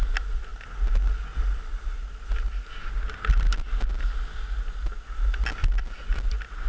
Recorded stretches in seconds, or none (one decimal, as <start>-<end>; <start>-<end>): 0.0-6.7